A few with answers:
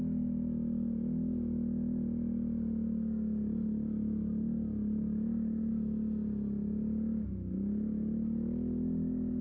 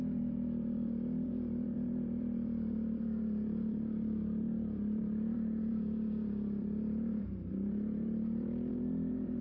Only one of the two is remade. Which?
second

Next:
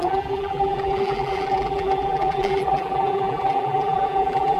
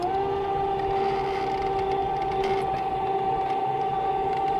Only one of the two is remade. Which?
first